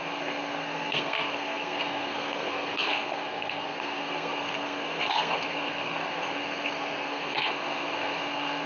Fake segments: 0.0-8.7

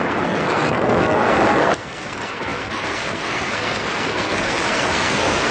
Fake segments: 0.0-5.5

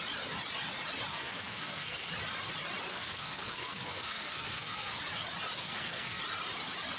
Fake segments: 1.1-2.1; 2.9-5.0; 5.6-6.2